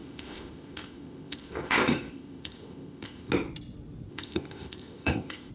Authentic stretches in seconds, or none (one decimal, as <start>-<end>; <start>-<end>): 3.3-4.1